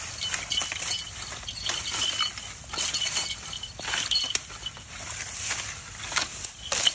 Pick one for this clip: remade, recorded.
recorded